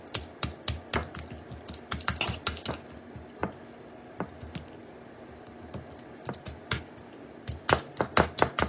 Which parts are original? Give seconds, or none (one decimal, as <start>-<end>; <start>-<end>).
0.0-8.7